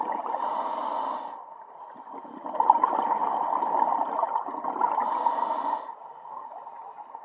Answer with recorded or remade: recorded